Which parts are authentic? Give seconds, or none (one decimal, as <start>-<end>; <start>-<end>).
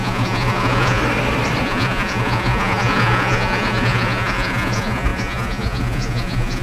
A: 1.0-1.6